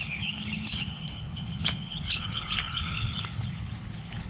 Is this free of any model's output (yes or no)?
no